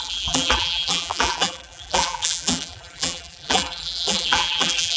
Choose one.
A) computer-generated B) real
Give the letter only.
A